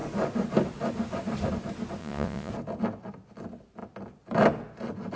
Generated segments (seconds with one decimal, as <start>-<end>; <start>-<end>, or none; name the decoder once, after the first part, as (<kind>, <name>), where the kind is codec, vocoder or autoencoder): 2.0-2.5 (vocoder, Vocos)